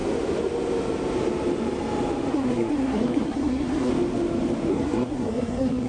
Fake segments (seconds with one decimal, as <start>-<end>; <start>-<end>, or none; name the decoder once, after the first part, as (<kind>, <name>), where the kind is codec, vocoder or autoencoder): 2.3-3.9 (codec, SNAC); 4.7-5.9